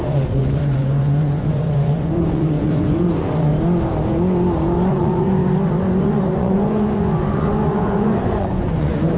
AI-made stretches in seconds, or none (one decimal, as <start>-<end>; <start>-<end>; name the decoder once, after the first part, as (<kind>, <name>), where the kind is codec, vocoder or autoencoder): 0.0-3.5 (vocoder, Vocos); 4.9-5.4; 6.0-9.2